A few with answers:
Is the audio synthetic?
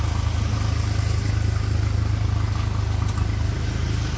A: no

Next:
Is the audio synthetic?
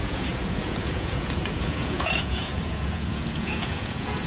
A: yes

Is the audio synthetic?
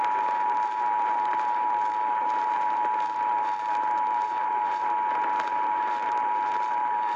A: yes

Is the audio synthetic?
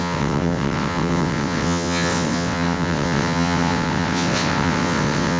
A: yes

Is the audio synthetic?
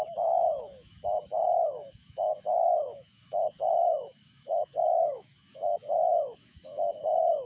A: yes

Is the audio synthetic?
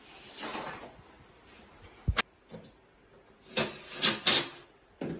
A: no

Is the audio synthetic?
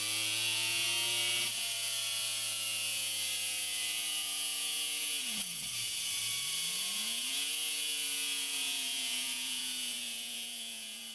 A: yes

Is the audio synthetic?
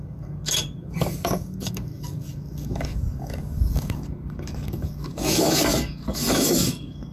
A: yes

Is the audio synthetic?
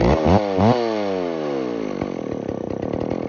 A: no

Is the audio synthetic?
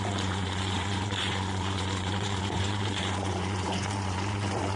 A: yes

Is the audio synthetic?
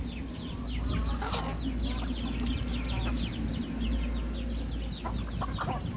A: no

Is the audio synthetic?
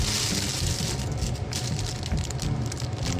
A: no